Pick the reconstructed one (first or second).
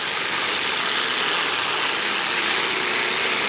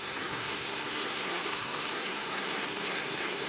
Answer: second